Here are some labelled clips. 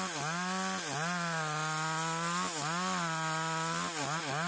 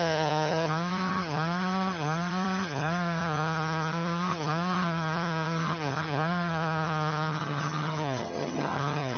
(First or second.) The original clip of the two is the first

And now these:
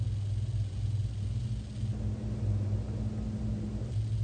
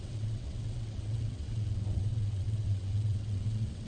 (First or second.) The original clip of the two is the first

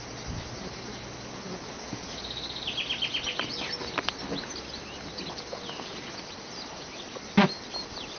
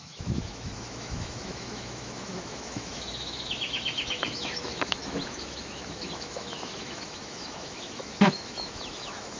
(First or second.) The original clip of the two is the first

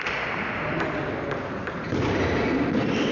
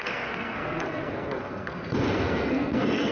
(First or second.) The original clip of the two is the first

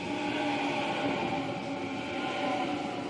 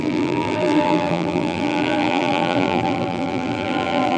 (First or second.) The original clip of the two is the first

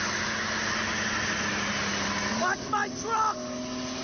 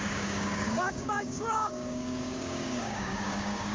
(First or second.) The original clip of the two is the first